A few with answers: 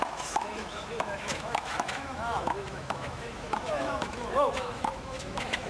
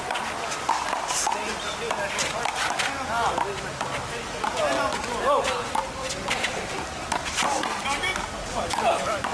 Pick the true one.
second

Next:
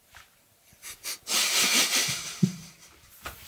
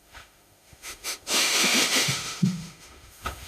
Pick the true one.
first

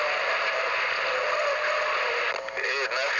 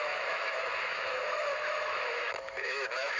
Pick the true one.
first